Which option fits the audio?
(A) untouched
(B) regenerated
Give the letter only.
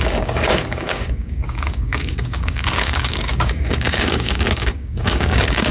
B